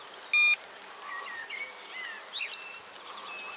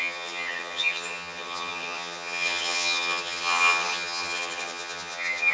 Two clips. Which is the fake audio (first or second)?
second